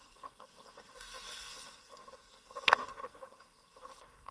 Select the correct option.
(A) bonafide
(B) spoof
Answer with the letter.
B